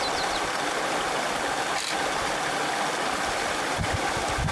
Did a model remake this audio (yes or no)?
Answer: no